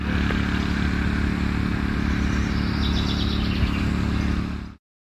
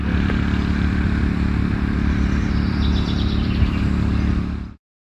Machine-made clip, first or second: second